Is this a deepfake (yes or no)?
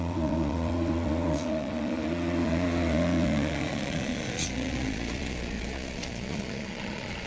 yes